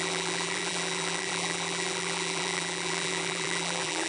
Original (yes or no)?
no